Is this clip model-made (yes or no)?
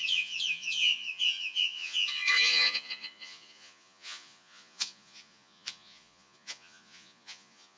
yes